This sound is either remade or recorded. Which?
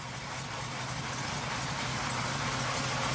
recorded